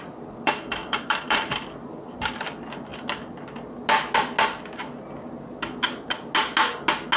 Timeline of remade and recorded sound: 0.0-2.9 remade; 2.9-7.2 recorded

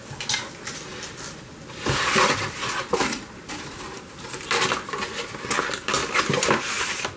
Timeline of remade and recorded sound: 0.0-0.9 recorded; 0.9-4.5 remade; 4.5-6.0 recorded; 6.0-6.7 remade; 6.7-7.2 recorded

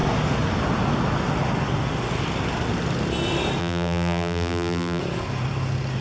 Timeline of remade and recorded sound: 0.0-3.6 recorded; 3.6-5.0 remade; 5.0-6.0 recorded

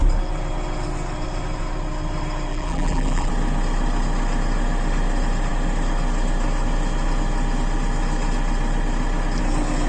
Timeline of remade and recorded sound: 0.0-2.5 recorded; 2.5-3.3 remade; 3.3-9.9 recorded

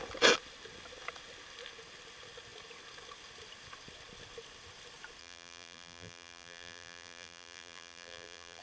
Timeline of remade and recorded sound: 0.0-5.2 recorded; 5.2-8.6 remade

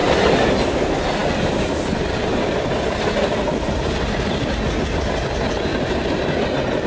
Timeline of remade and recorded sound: 0.0-6.9 recorded

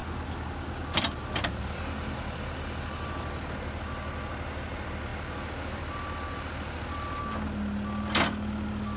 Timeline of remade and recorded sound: 0.0-9.0 recorded

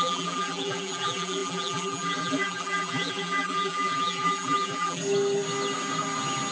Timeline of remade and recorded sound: 0.0-5.0 remade; 5.0-6.5 recorded